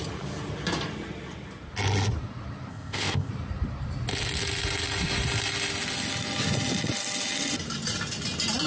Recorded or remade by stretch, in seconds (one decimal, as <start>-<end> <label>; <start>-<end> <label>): 0.0-2.7 recorded; 2.7-3.3 remade; 3.3-8.7 recorded